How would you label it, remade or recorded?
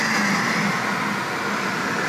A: recorded